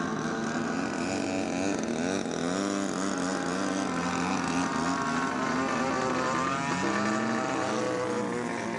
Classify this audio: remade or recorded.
recorded